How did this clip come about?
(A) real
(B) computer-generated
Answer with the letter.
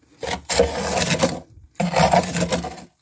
A